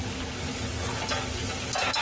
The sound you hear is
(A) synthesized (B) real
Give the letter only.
B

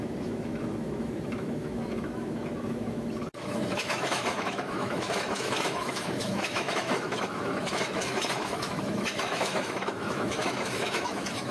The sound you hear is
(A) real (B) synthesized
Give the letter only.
B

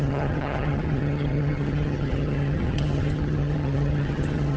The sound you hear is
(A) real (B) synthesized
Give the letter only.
B